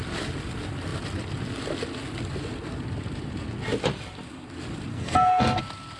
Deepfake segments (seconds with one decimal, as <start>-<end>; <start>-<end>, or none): 4.9-5.6